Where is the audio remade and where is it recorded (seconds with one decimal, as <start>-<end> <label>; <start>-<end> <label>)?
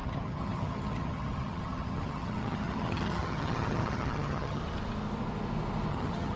0.0-4.6 remade; 4.6-5.9 recorded; 5.9-6.4 remade